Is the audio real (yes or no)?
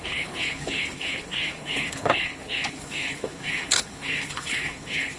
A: no